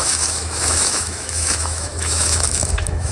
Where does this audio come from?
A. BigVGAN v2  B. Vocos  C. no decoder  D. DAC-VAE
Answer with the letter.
D